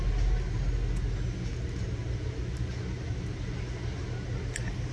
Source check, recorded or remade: recorded